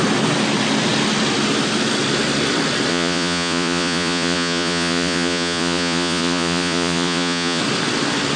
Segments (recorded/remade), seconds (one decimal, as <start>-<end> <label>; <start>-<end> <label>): 0.0-2.9 recorded; 2.9-7.6 remade; 7.6-8.4 recorded

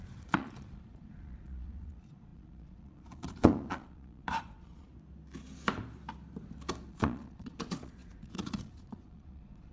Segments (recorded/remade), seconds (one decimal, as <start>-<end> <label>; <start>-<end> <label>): 0.0-4.9 remade; 4.9-6.9 recorded; 6.9-9.7 remade

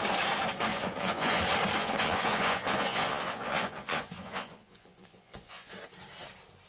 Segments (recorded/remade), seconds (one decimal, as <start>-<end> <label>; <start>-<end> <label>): 0.0-0.7 recorded; 0.7-1.4 remade; 1.4-1.8 recorded; 1.8-5.7 remade; 5.7-6.7 recorded

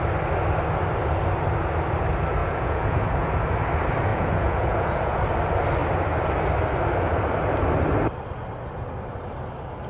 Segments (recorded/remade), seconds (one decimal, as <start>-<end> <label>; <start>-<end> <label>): 0.0-2.4 recorded; 2.4-3.3 remade; 3.3-4.1 recorded; 4.1-5.2 remade; 5.2-9.9 recorded